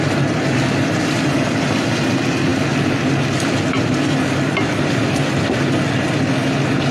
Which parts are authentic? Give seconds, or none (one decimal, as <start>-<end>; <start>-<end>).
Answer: 0.0-6.9